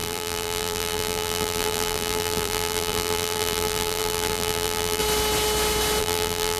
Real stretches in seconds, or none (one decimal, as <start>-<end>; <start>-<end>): 5.0-6.0